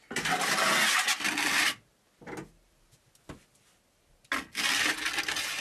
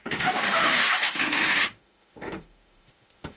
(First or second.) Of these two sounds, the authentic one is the first